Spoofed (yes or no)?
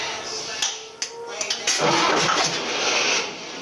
no